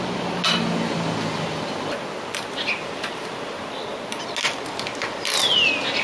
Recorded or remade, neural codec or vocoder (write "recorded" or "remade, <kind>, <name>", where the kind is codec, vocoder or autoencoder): recorded